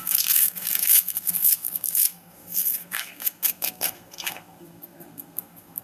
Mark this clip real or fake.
fake